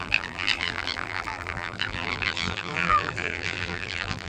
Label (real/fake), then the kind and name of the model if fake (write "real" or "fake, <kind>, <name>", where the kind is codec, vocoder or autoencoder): fake, vocoder, BigVGAN v2